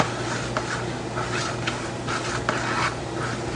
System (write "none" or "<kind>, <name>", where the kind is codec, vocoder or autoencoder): none